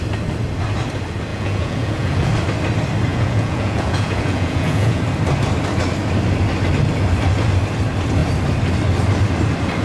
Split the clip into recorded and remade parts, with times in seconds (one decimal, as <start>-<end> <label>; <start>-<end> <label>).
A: 0.0-1.3 recorded; 1.3-2.3 remade; 2.3-3.1 recorded; 3.1-5.0 remade; 5.0-9.8 recorded